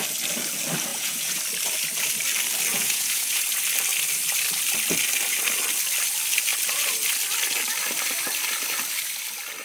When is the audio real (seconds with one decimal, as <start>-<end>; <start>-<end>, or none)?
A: 0.0-0.9; 1.4-2.7; 3.4-9.6